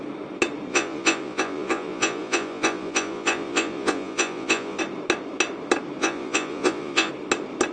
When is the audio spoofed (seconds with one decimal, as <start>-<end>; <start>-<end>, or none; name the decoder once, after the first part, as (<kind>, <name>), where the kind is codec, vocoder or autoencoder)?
0.7-4.8 (vocoder, Vocos); 6.0-7.1